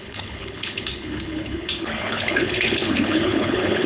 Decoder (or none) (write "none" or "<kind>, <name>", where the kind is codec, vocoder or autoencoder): codec, HILCodec